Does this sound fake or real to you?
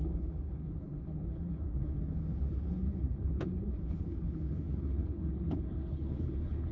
fake